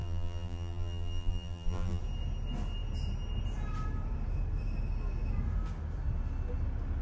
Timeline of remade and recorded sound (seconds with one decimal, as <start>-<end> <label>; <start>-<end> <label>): 0.0-2.0 remade; 2.0-7.0 recorded